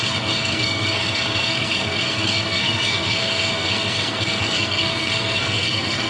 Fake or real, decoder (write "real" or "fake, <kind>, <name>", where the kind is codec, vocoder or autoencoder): fake, codec, SNAC